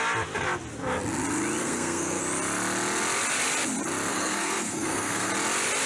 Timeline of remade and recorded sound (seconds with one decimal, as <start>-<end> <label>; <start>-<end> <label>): 0.0-1.6 recorded; 1.6-2.2 remade; 2.2-4.1 recorded; 4.1-5.3 remade; 5.3-5.9 recorded